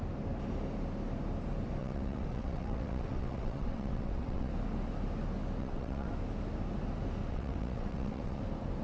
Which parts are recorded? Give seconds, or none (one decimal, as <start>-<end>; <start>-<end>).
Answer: 0.0-1.8; 4.5-5.6; 6.1-7.2; 8.4-8.8